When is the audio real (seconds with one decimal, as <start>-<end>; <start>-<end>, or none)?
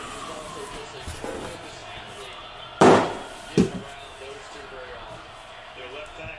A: 0.0-6.4